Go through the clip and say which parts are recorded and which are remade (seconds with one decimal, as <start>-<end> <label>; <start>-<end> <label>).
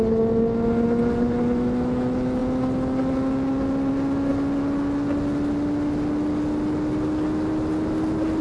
0.0-8.4 recorded